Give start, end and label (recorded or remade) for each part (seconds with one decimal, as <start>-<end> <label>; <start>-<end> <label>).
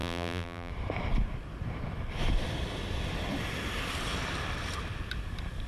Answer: 0.0-0.7 remade; 0.7-5.7 recorded